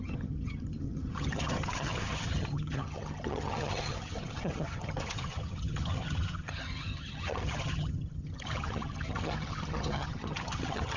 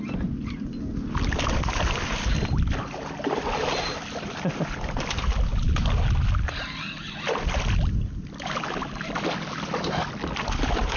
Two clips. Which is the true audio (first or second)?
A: second